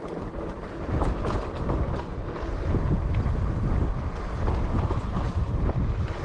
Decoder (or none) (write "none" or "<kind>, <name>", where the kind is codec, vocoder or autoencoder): none